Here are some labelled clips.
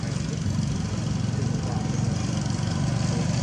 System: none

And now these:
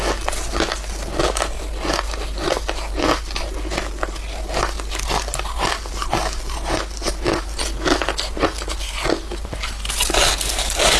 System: none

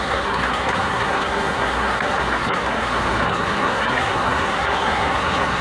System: codec, SNAC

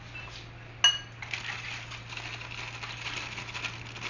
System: none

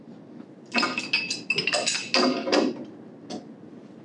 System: none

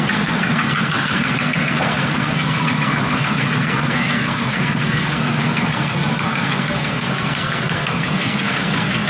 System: codec, SNAC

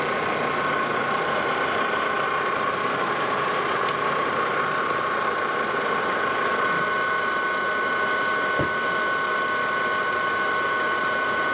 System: none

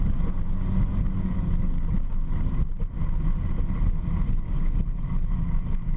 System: none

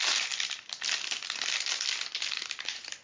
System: none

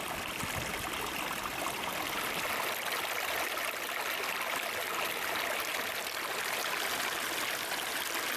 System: none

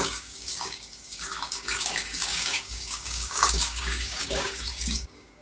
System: codec, DAC